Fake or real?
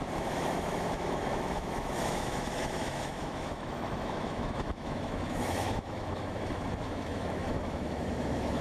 fake